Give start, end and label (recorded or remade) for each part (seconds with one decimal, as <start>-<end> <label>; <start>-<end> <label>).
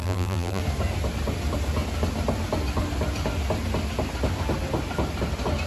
0.0-0.6 remade; 0.6-5.7 recorded